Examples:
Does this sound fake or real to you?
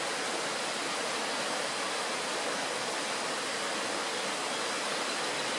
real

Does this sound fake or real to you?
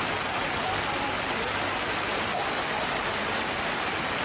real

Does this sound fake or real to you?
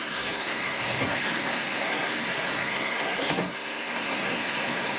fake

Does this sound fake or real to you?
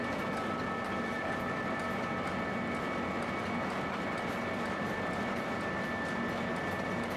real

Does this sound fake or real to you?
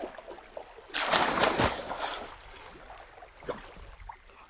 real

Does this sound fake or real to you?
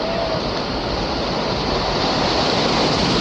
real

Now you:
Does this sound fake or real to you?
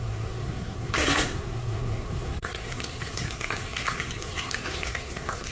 fake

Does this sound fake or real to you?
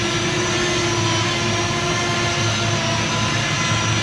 real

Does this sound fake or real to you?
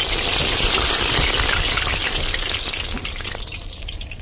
real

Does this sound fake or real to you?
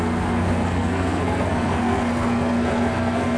fake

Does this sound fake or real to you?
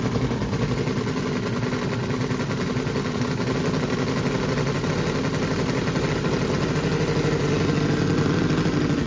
real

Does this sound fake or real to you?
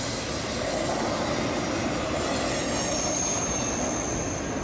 real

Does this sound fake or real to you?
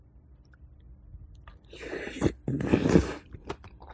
real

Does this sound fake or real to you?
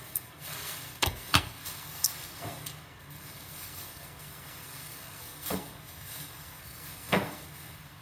fake